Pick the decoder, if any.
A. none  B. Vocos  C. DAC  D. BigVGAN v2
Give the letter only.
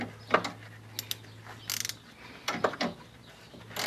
A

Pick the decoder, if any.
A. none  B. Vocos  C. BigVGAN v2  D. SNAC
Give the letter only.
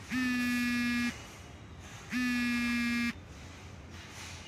A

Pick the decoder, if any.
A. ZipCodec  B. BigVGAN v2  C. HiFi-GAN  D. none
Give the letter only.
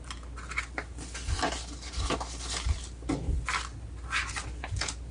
D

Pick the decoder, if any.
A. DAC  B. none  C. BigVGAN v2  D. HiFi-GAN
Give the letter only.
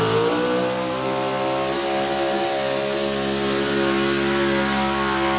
B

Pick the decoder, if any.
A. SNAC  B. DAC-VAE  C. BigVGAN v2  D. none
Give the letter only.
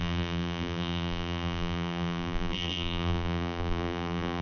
C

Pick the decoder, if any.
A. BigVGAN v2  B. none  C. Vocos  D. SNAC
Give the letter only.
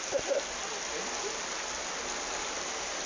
B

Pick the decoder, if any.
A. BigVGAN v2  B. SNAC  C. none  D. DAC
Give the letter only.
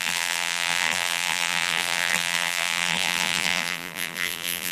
A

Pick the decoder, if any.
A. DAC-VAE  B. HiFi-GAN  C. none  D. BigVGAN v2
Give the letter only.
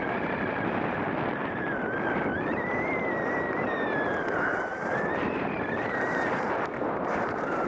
D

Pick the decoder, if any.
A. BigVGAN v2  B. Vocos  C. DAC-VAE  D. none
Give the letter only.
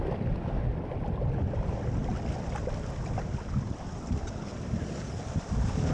D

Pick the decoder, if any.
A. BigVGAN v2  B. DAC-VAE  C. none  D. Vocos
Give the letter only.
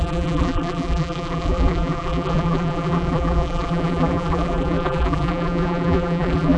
A